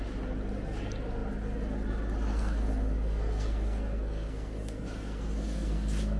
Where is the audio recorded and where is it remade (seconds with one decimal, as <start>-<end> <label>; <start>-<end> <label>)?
0.0-2.3 recorded; 2.3-6.2 remade